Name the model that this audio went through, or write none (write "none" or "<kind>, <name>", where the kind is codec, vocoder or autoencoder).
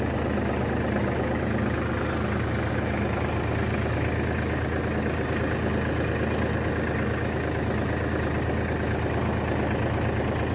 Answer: none